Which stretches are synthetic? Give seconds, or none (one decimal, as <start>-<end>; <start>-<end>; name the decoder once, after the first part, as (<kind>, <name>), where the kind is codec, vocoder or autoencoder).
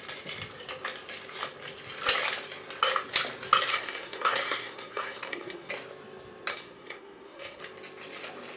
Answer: 3.7-5.7 (codec, SNAC); 6.5-7.6